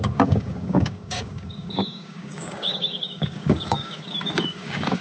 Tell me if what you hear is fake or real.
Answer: fake